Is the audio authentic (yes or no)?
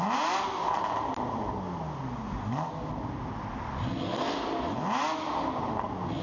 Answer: yes